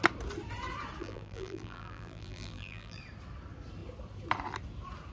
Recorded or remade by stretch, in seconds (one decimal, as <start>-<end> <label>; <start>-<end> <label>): 0.0-1.0 recorded; 1.0-3.0 remade; 3.0-5.1 recorded